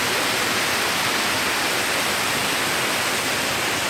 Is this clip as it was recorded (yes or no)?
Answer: yes